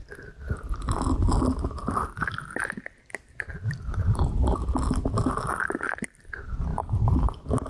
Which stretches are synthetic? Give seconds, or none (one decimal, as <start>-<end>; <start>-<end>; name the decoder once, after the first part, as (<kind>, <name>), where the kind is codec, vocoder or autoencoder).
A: none